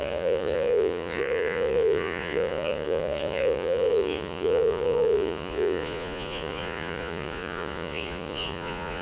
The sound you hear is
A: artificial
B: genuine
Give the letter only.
A